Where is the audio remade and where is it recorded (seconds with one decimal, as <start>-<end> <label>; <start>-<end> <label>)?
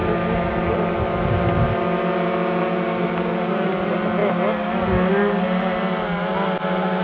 0.0-7.0 recorded